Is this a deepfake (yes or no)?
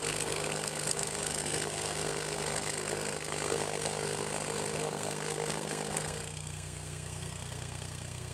yes